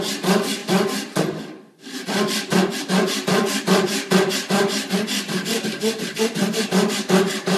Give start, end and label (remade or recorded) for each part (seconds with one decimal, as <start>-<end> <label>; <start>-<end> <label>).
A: 0.0-0.6 remade; 0.6-1.7 recorded; 1.7-7.6 remade